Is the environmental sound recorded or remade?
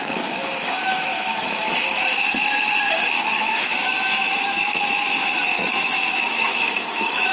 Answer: remade